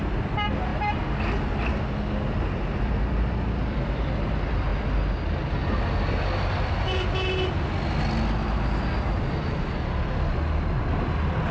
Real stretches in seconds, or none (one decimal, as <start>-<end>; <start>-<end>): 0.0-11.5